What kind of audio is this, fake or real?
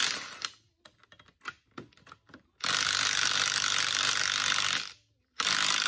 real